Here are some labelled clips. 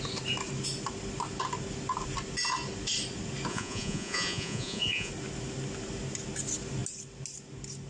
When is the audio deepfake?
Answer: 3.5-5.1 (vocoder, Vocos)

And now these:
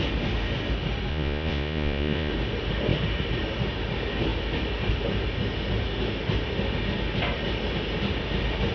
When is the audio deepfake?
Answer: 1.1-2.3 (vocoder, Vocos)

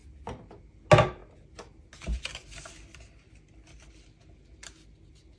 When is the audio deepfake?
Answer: none

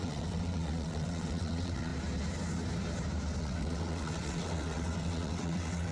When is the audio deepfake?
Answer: 0.0-1.9 (vocoder, WaveNeXt); 3.4-5.9

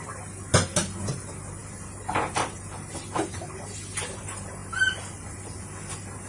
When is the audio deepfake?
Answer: none

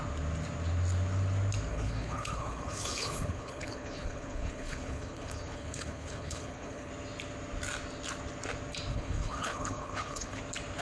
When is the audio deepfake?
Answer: 1.7-6.9 (codec, HILCodec); 8.9-10.4

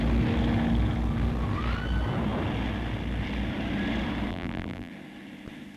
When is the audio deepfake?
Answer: 4.3-4.9 (vocoder, BigVGAN v2)

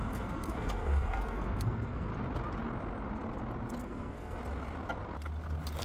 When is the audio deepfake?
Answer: 0.0-2.1 (codec, SNAC); 3.8-4.4